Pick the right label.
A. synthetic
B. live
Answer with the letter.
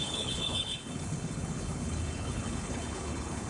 A